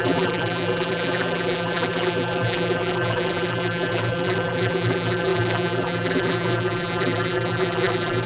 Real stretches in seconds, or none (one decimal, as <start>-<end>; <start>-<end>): none

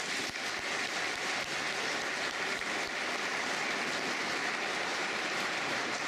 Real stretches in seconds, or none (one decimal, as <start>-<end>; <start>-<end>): 0.0-4.9

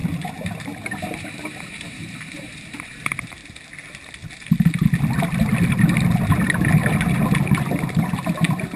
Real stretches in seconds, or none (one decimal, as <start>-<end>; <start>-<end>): 3.4-7.6

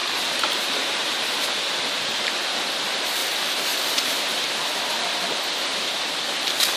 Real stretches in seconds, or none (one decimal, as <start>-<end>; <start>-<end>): 1.5-6.8

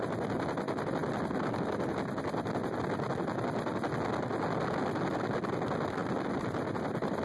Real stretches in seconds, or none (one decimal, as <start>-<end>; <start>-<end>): 0.0-6.0